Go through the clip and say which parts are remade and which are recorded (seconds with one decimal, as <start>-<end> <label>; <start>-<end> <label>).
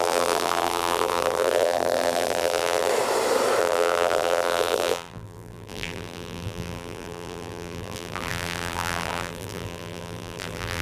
0.0-2.9 remade; 2.9-3.6 recorded; 3.6-10.8 remade